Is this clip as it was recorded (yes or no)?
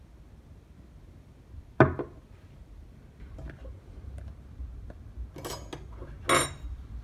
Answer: yes